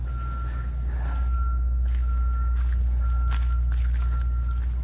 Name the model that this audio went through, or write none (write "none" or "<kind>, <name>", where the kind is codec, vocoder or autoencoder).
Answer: none